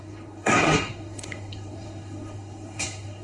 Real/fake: fake